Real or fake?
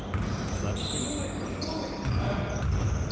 real